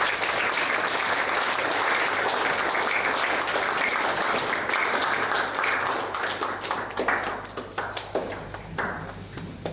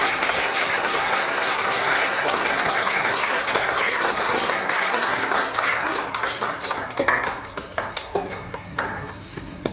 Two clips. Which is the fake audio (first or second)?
second